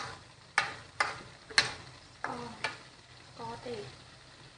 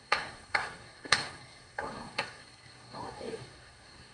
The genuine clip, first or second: first